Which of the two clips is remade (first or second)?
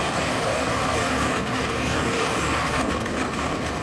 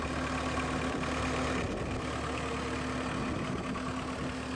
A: first